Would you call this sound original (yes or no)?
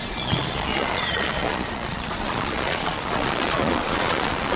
no